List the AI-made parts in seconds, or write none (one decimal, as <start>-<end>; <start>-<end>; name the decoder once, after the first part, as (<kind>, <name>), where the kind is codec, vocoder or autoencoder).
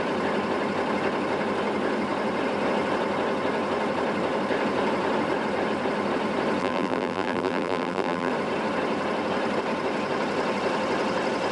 6.6-8.3 (vocoder, BigVGAN v2)